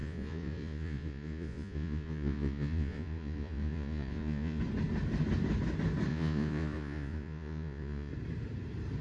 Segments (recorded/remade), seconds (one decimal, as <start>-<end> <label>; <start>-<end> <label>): 0.0-4.6 remade; 4.6-6.1 recorded; 6.1-8.1 remade; 8.1-9.0 recorded